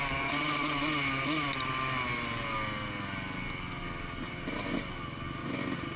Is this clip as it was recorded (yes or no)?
yes